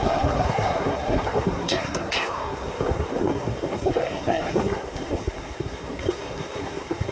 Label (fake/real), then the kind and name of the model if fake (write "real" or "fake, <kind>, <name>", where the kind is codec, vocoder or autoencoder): fake, codec, SNAC